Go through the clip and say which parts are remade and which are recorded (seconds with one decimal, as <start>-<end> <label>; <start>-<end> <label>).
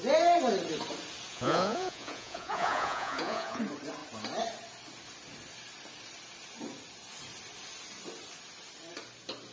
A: 0.0-1.3 recorded; 1.3-3.6 remade; 3.6-9.5 recorded